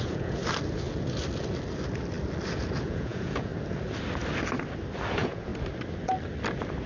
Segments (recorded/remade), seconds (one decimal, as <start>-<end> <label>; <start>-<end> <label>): 0.0-0.4 remade; 0.4-2.5 recorded; 2.5-3.5 remade; 3.5-5.1 recorded; 5.1-5.5 remade; 5.5-6.9 recorded